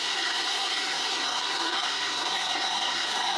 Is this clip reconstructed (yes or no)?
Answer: yes